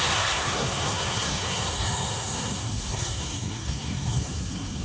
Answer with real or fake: fake